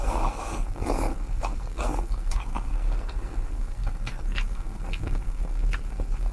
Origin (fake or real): fake